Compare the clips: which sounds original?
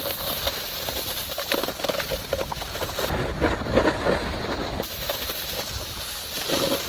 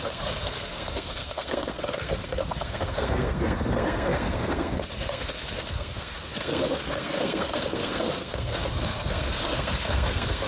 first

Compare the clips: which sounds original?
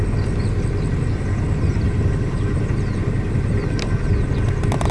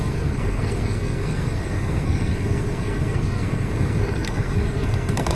first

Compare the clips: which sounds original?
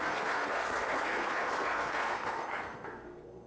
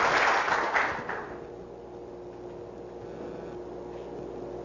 second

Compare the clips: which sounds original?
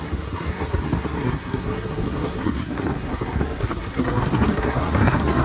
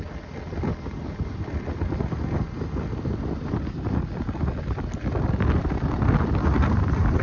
second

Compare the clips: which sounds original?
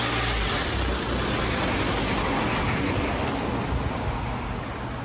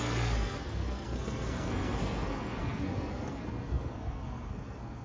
first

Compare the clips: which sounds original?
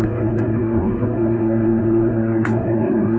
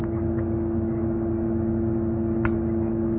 second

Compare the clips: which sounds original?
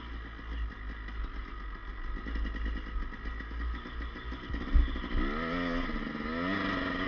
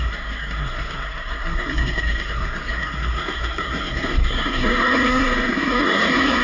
first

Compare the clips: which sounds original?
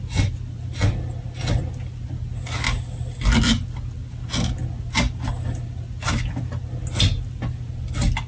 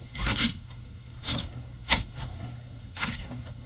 first